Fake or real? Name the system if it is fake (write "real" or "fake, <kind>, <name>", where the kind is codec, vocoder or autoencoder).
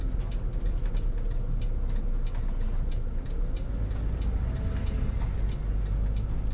real